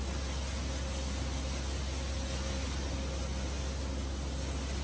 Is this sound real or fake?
real